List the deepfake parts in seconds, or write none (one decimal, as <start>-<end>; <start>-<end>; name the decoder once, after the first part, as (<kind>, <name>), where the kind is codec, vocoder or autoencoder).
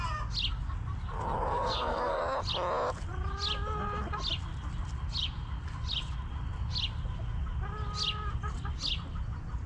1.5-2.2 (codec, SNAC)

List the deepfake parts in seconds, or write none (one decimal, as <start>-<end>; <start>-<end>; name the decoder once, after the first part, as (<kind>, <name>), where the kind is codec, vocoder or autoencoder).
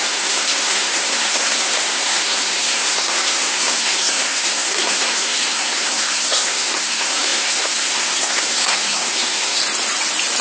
0.0-9.6 (codec, SNAC)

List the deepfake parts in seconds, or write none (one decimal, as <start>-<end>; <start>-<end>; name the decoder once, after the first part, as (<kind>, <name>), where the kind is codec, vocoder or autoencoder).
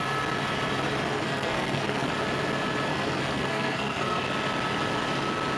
1.1-2.1 (codec, SNAC); 2.9-4.2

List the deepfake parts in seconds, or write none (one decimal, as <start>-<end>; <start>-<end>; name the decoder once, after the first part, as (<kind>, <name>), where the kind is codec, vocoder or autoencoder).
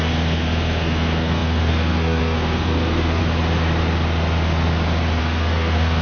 0.0-3.2 (codec, SNAC); 5.2-6.0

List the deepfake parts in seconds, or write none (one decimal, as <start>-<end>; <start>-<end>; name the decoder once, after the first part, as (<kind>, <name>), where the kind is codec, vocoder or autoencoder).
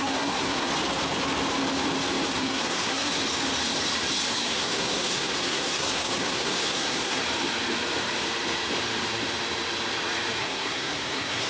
0.0-0.7 (codec, SNAC); 2.3-3.2; 4.3-7.2; 10.4-11.5